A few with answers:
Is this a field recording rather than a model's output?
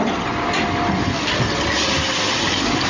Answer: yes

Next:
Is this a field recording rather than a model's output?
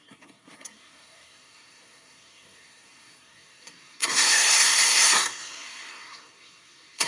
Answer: no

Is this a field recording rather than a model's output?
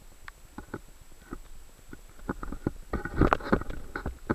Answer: yes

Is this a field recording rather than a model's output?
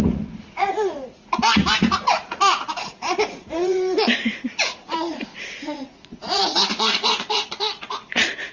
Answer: no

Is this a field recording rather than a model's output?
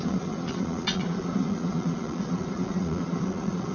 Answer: no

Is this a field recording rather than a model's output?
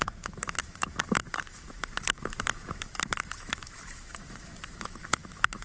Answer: no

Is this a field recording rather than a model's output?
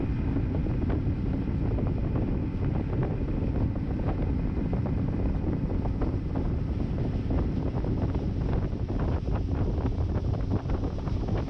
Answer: yes